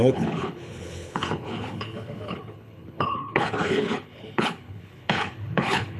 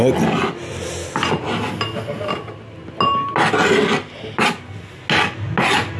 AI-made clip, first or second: first